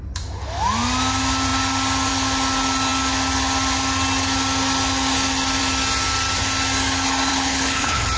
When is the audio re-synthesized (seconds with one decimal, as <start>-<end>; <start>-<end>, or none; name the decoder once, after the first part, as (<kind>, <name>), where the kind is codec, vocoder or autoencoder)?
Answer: 7.3-8.2 (codec, HILCodec)